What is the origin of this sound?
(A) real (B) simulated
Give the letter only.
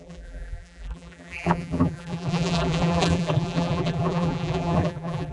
B